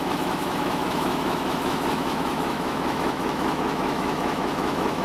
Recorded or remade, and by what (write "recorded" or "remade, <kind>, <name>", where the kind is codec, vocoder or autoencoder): remade, autoencoder, DAC-VAE